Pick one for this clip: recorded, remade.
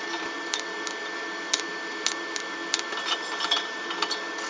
recorded